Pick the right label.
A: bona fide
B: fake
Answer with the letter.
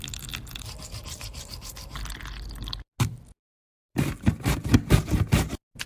A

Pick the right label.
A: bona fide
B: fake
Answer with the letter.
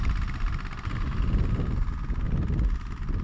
A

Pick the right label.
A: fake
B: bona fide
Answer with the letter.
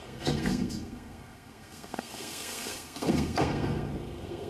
A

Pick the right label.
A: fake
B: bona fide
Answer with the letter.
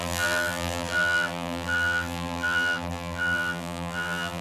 A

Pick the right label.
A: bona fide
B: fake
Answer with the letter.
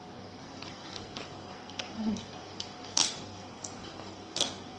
B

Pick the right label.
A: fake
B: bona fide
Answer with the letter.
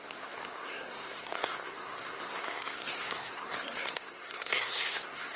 A